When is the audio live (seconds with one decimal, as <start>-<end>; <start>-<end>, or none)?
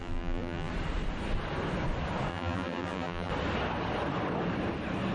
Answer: 0.7-2.3; 3.3-5.1